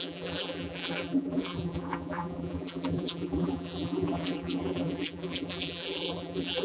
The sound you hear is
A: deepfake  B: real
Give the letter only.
A